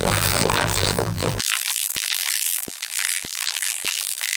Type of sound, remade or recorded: remade